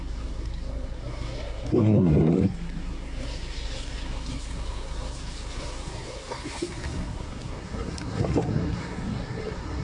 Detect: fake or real fake